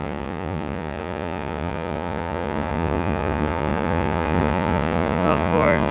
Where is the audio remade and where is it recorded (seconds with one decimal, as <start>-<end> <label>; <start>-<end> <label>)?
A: 0.0-5.9 remade